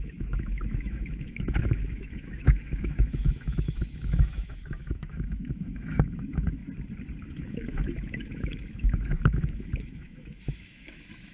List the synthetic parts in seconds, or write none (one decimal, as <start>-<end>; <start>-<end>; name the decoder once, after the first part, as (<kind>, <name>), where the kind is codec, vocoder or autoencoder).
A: 0.0-6.6 (autoencoder, DAC-VAE); 7.2-11.3